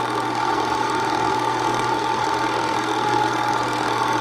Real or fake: fake